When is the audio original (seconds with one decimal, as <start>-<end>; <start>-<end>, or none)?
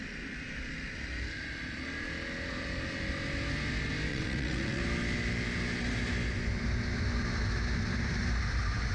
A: 0.0-4.1; 4.8-8.9